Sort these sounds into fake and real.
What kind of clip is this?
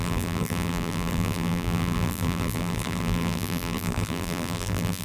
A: fake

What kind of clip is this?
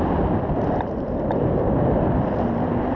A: fake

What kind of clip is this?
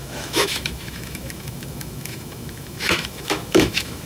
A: fake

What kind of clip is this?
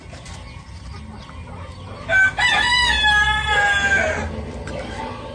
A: real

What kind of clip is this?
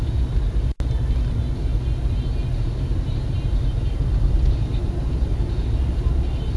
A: real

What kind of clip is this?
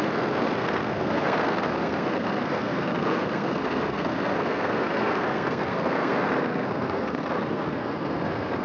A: fake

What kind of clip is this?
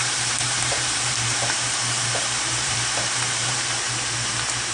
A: fake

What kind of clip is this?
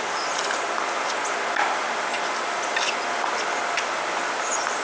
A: real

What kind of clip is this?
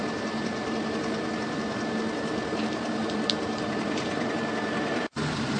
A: fake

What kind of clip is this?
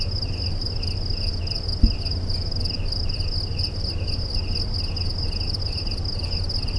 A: real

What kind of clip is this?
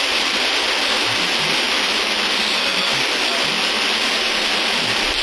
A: real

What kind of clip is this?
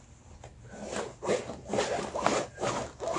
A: real